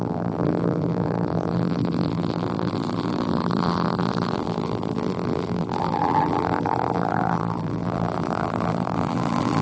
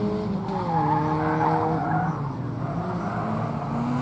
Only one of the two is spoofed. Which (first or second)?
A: first